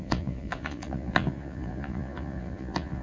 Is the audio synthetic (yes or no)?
yes